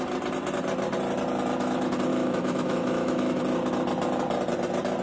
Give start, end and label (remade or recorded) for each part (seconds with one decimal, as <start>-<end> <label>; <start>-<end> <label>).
0.0-2.1 recorded; 2.1-3.4 remade; 3.4-5.0 recorded